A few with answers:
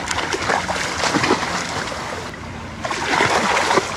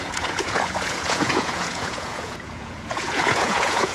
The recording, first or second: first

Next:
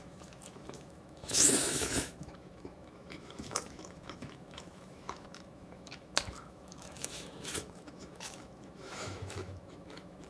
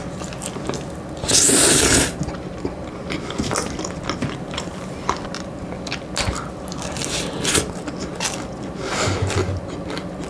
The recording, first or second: second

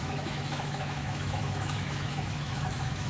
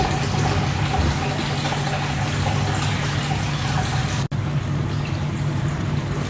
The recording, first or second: second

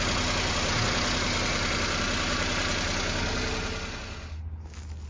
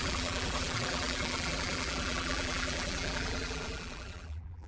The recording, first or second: first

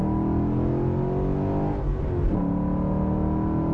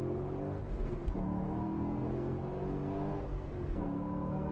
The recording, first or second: first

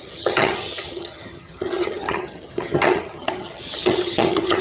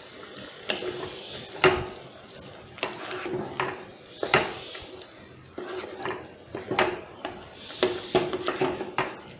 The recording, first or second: second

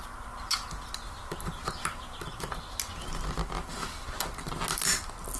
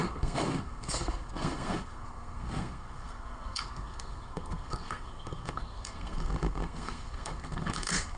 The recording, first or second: first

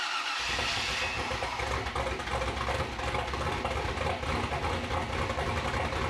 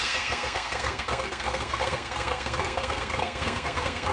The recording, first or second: first